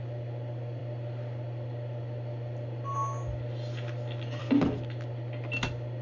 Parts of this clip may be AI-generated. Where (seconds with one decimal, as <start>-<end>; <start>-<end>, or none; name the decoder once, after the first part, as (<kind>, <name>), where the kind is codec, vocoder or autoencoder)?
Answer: none